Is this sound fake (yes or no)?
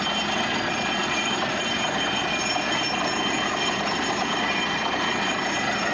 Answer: no